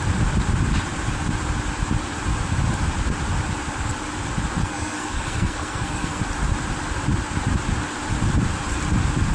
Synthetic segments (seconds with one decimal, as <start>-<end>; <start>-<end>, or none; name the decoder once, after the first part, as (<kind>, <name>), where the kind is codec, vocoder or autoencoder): 4.6-6.2 (codec, SNAC)